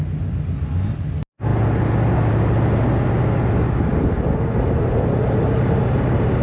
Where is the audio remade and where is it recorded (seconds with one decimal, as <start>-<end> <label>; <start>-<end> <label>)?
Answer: 0.0-6.4 recorded

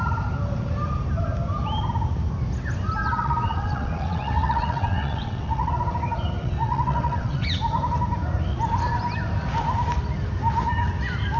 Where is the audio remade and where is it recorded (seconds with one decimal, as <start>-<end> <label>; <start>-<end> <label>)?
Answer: 0.0-3.0 recorded; 3.0-5.7 remade; 5.7-6.4 recorded; 6.4-7.6 remade; 7.6-11.4 recorded

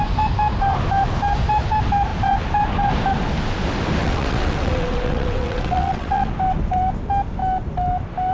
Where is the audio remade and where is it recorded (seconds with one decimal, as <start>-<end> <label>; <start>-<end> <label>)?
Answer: 0.0-4.0 recorded; 4.0-6.3 remade; 6.3-8.3 recorded

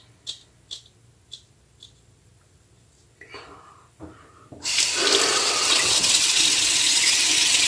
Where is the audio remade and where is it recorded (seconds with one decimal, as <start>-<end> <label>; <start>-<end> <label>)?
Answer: 0.0-5.3 recorded; 5.3-7.7 remade